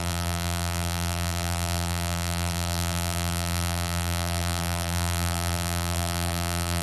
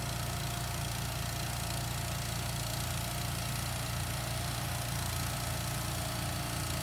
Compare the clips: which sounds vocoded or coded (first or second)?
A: first